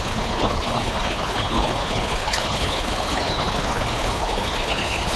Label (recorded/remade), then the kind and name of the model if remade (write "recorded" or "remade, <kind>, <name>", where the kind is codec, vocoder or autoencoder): remade, codec, HILCodec